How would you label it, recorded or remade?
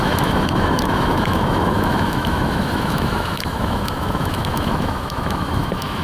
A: remade